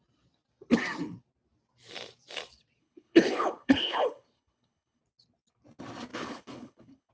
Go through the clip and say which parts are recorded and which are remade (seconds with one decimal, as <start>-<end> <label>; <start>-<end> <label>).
0.0-2.8 recorded; 2.8-5.0 remade; 5.0-6.1 recorded; 6.1-7.1 remade